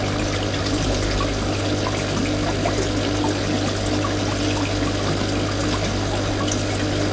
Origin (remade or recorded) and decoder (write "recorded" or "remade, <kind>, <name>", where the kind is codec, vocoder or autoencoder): recorded